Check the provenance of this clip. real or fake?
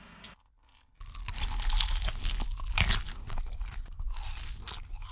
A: real